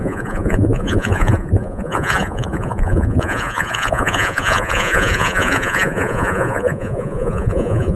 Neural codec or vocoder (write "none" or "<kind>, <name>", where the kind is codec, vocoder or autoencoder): vocoder, Vocos